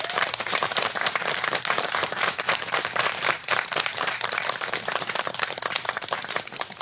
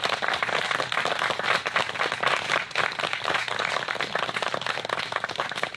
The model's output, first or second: first